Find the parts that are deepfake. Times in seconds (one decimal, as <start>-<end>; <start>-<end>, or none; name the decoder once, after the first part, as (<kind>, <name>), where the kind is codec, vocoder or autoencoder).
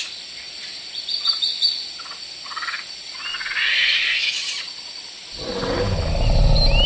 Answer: 3.3-4.2 (vocoder, Vocos)